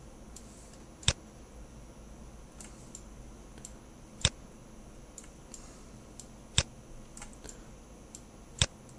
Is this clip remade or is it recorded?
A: recorded